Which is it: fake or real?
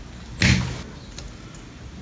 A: real